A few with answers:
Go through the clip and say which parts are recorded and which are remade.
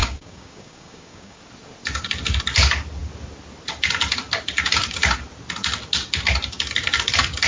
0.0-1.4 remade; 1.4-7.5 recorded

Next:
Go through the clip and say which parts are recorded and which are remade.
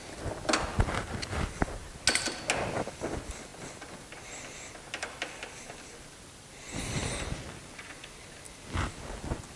0.0-9.6 recorded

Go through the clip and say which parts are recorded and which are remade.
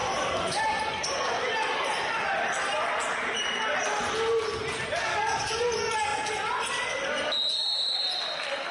0.0-5.1 recorded; 5.1-5.6 remade; 5.6-8.7 recorded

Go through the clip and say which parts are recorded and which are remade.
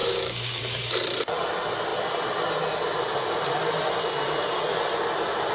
0.0-0.6 remade; 0.6-5.5 recorded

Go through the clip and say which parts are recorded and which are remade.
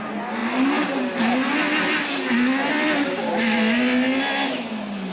0.0-5.1 recorded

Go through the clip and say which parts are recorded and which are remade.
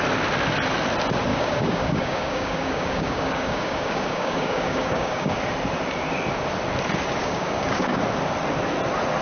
0.0-1.3 recorded; 1.3-5.4 remade; 5.4-7.2 recorded; 7.2-8.0 remade; 8.0-9.2 recorded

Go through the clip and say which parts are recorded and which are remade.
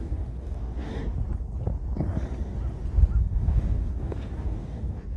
0.0-0.9 remade; 0.9-3.2 recorded; 3.2-5.2 remade